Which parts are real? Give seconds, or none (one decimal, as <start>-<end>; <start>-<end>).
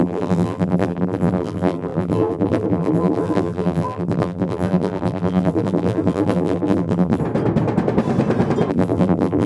7.2-8.7